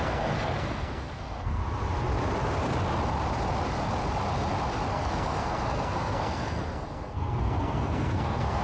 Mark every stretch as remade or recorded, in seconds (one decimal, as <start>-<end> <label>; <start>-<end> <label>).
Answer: 0.0-1.6 remade; 1.6-4.9 recorded; 4.9-8.6 remade